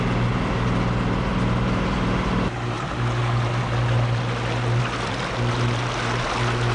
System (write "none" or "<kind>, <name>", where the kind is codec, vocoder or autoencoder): none